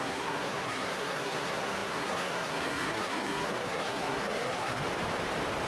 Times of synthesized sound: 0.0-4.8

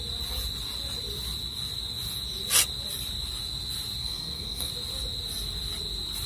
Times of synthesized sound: 4.0-4.7

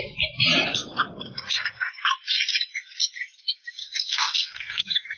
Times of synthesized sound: 3.8-5.2

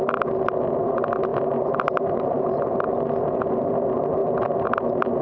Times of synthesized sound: none

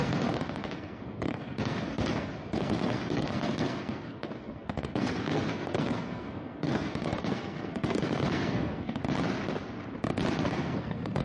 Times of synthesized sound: 0.0-9.0; 10.4-11.2

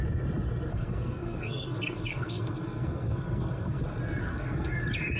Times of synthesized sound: 0.7-3.8; 4.3-4.8

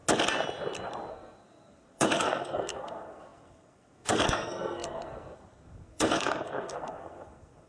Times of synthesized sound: 1.1-7.7